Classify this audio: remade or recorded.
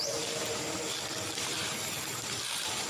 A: recorded